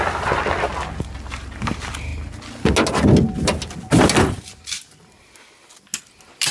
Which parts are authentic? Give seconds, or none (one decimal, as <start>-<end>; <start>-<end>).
0.0-6.5